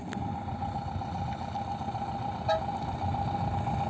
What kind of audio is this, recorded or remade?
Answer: recorded